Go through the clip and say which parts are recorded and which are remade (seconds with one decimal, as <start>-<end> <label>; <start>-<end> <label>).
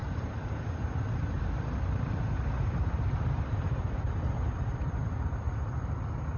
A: 0.0-5.0 remade; 5.0-6.4 recorded